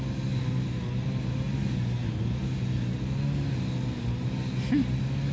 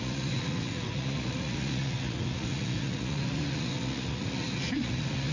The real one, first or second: first